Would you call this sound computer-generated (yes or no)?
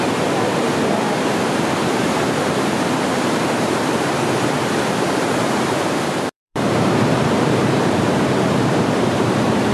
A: yes